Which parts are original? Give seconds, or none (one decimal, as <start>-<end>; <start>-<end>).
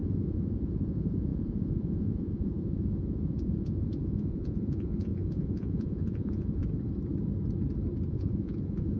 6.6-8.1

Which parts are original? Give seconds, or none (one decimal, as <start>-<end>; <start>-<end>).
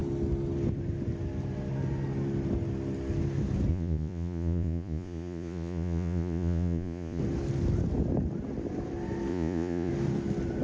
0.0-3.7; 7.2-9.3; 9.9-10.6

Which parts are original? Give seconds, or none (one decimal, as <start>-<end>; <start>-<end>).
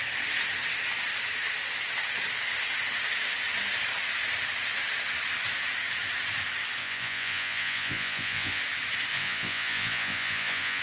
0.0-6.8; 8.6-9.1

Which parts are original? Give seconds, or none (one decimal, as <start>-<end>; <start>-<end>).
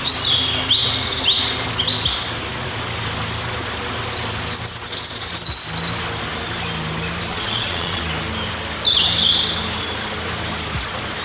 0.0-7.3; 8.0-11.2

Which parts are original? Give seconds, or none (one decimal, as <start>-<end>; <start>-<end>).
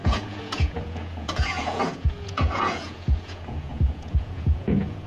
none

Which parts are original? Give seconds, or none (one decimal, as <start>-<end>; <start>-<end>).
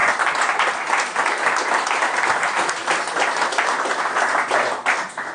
0.0-5.3